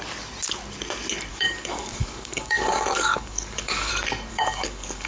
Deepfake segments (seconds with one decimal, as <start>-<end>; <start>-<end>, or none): 1.3-3.9; 4.3-5.1